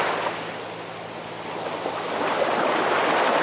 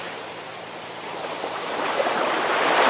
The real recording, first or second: first